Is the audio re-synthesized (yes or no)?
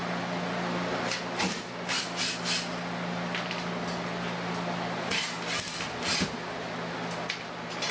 no